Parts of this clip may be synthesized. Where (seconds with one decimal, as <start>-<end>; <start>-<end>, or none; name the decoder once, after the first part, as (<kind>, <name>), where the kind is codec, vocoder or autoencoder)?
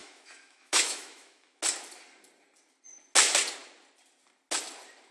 0.0-1.6 (autoencoder, DAC-VAE)